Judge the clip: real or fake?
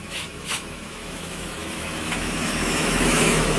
fake